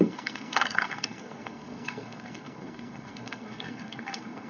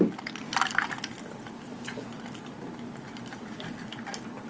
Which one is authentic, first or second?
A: second